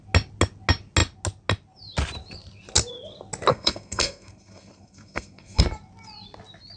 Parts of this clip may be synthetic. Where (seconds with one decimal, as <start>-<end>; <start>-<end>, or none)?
3.5-5.6